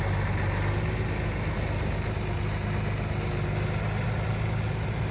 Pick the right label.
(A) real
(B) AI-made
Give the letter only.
A